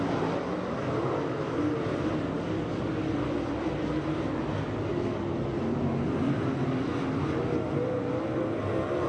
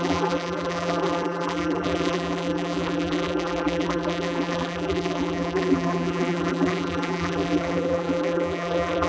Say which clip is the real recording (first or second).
first